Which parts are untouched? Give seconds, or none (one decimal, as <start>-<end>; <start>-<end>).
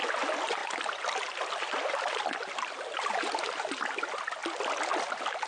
0.0-0.6; 3.8-5.5